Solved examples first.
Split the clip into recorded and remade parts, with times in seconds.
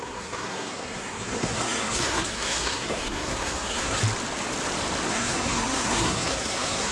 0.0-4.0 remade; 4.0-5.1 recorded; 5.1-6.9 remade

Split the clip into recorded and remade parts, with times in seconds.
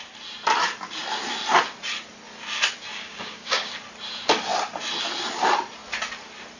0.0-2.9 recorded; 2.9-3.7 remade; 3.7-6.6 recorded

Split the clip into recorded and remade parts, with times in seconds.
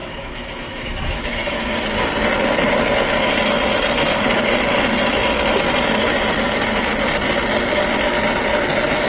0.0-1.6 remade; 1.6-9.1 recorded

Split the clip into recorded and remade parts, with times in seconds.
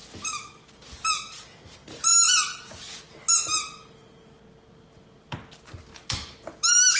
0.0-7.0 recorded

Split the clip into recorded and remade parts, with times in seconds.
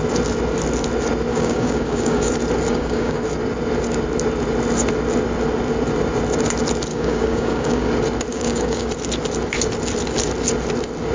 0.0-1.3 recorded; 1.3-2.3 remade; 2.3-2.7 recorded; 2.7-3.2 remade; 3.2-6.9 recorded; 6.9-7.9 remade; 7.9-8.3 recorded; 8.3-8.9 remade; 8.9-11.1 recorded